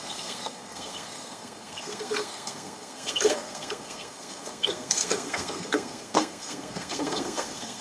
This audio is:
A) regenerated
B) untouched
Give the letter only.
A